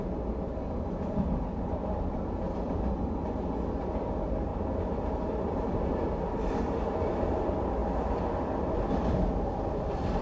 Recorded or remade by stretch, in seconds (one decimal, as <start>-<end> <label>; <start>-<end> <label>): 0.0-10.2 recorded